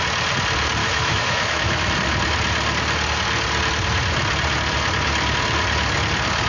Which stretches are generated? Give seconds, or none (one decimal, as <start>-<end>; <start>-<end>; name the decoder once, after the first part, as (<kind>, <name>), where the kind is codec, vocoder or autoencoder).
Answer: 0.8-1.9 (autoencoder, DAC-VAE)